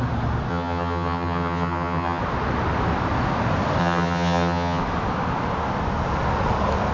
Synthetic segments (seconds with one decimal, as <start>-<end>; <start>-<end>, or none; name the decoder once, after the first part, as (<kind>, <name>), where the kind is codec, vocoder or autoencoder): 0.5-2.2 (vocoder, HiFi-GAN); 3.8-4.8